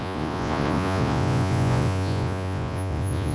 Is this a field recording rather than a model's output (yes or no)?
no